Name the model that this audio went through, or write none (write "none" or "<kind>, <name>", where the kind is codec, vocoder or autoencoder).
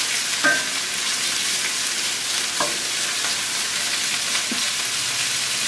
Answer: none